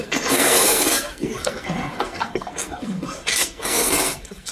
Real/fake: fake